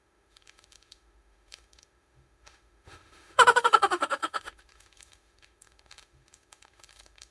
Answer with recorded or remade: remade